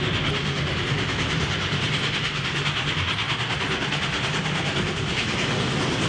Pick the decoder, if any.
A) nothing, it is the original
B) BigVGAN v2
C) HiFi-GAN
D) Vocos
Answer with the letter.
A